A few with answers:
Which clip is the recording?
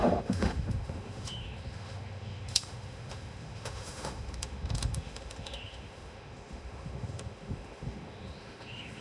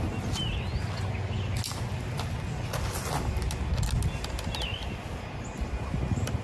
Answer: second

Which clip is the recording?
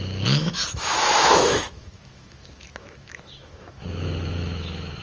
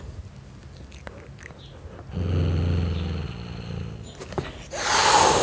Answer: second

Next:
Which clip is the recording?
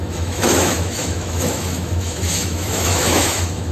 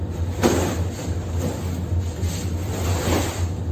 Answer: second